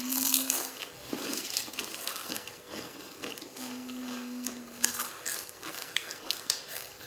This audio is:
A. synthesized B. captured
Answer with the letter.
A